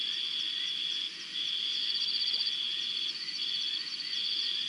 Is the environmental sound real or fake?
fake